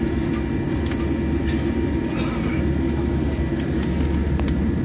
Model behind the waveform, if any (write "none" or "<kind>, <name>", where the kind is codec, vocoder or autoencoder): none